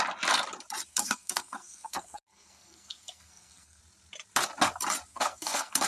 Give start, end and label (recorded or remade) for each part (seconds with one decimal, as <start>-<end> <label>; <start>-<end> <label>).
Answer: 0.0-0.9 recorded; 0.9-3.8 remade; 3.8-5.1 recorded; 5.1-5.9 remade